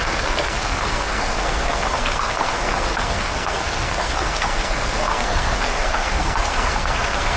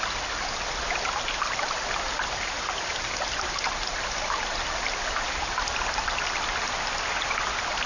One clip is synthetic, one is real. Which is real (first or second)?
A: second